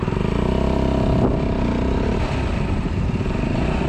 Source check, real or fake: real